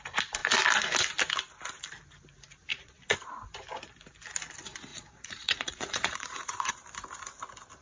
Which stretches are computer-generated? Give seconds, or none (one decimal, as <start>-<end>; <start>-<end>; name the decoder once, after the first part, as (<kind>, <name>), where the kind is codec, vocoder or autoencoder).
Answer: 2.7-3.3 (vocoder, Vocos); 4.9-6.7